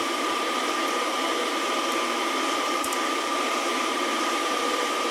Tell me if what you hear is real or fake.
fake